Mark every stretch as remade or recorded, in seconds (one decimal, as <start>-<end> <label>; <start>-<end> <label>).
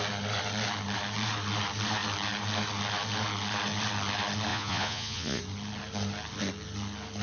0.0-4.5 recorded; 4.5-5.4 remade; 5.4-7.2 recorded